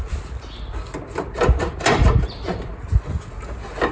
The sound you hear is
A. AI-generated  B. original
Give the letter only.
B